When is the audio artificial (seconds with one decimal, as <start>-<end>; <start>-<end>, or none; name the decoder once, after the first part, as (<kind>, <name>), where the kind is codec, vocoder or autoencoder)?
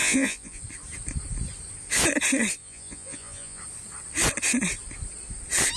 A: 0.0-0.6 (vocoder, Vocos); 2.6-3.6